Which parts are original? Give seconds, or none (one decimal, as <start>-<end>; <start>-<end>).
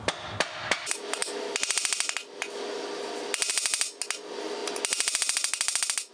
0.0-6.1